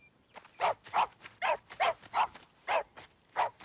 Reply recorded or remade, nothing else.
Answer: remade